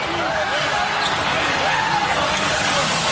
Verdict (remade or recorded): recorded